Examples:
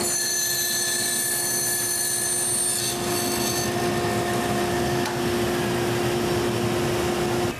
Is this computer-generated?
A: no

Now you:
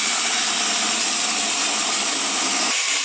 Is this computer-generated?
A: yes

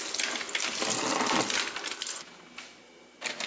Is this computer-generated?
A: no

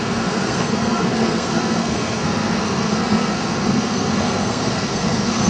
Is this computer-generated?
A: yes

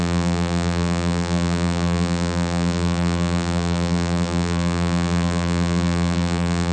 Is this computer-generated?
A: yes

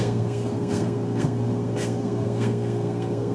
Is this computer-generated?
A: yes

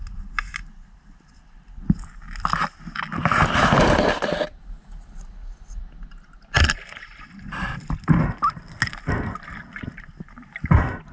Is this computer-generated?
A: no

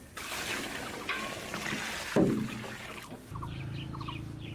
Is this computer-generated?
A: no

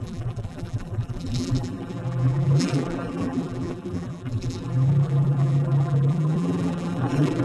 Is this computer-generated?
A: yes